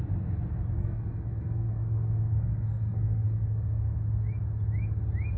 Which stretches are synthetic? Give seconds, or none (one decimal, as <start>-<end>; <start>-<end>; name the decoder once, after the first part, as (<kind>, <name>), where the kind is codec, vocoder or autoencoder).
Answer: 0.8-4.0 (codec, SNAC)